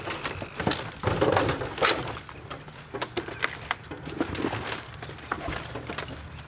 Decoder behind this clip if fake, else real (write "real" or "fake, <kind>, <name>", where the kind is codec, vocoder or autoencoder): real